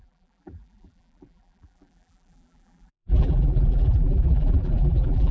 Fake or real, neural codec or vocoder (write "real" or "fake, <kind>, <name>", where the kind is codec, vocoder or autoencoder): fake, vocoder, BigVGAN v2